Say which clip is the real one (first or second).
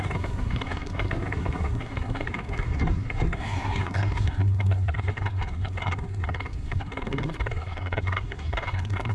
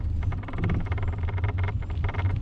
second